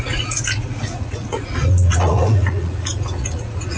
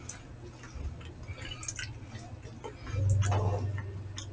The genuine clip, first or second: second